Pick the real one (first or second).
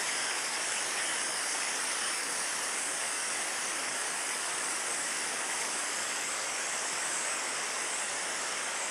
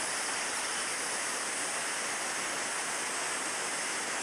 second